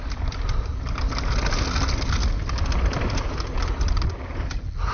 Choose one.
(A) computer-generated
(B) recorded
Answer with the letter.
B